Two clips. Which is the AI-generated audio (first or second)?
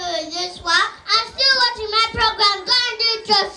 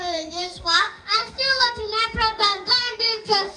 second